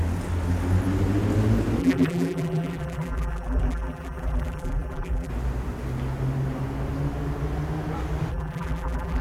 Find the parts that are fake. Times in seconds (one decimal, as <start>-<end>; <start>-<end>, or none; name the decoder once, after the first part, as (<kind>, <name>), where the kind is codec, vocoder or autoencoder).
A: 1.8-5.3 (vocoder, BigVGAN v2); 8.3-9.2